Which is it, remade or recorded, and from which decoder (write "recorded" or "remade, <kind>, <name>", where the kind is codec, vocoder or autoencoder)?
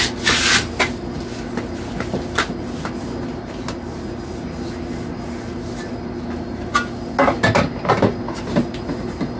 recorded